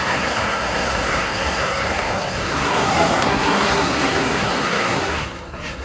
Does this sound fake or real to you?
fake